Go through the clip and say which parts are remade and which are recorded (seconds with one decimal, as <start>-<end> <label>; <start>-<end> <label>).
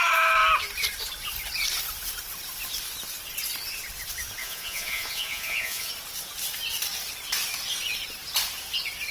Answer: 0.0-4.4 recorded; 4.4-5.9 remade; 5.9-9.1 recorded